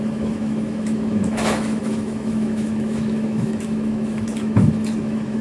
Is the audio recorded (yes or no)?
no